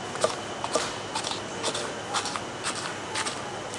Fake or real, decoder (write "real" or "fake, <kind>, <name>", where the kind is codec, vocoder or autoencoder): real